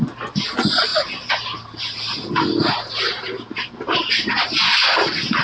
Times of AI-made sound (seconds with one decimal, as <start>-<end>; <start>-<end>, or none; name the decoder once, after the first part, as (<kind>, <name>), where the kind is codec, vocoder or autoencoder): none